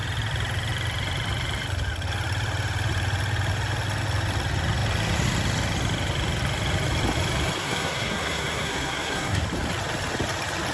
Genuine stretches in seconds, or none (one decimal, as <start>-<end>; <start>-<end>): 0.0-7.6; 9.4-10.7